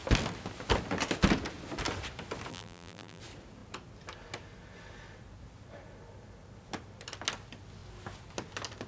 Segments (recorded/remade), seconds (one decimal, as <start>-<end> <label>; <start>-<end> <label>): 0.0-2.5 recorded; 2.5-3.2 remade; 3.2-8.9 recorded